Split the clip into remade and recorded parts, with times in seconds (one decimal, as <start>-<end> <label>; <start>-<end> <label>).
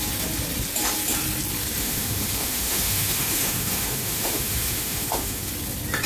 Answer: 0.0-1.8 recorded; 1.8-5.5 remade; 5.5-6.1 recorded